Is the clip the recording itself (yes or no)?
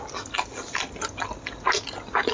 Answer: yes